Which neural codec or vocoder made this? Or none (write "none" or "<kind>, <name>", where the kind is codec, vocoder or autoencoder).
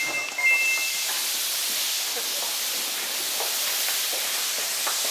none